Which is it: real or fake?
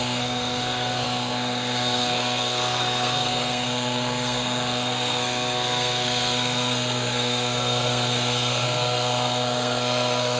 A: fake